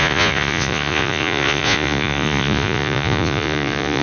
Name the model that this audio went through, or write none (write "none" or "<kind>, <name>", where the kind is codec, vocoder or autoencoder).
vocoder, Vocos